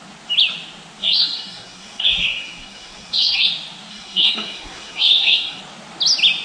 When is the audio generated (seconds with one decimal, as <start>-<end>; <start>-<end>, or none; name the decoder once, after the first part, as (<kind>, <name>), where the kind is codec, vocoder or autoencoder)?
1.0-3.5 (codec, SNAC); 3.9-5.6